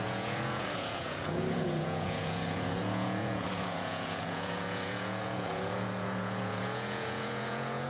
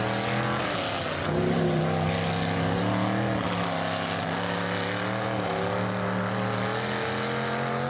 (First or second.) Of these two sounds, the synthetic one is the first